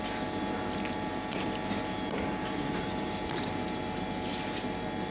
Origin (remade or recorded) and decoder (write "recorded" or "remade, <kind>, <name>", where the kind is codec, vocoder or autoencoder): recorded